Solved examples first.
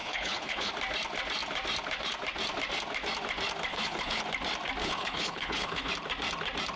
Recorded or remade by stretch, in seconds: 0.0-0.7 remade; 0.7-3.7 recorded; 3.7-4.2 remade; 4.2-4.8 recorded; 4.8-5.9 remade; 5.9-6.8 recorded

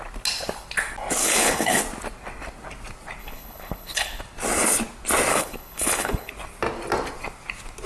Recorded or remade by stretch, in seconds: 0.0-1.2 recorded; 1.2-1.8 remade; 1.8-3.2 recorded; 3.2-4.2 remade; 4.2-5.3 recorded; 5.3-6.3 remade; 6.3-7.9 recorded

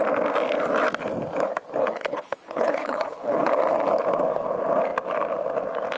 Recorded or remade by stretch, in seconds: 0.0-1.8 recorded; 1.8-3.5 remade; 3.5-6.0 recorded

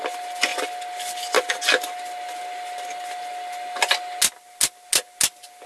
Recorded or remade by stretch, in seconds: 0.0-5.7 recorded

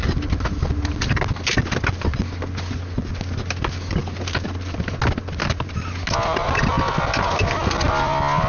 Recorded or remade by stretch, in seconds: 0.0-8.5 recorded

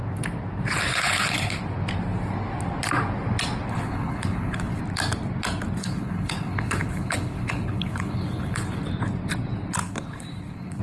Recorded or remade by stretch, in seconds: 0.0-0.9 recorded; 0.9-1.6 remade; 1.6-3.7 recorded; 3.7-4.8 remade; 4.8-5.8 recorded; 5.8-8.8 remade; 8.8-9.8 recorded; 9.8-10.8 remade

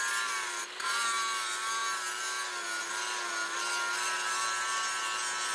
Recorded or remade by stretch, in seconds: 0.0-5.5 recorded

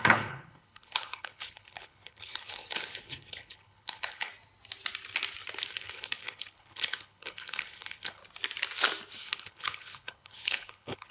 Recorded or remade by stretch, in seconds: 0.0-4.3 remade; 4.3-5.7 recorded; 5.7-8.2 remade; 8.2-9.2 recorded; 9.2-11.1 remade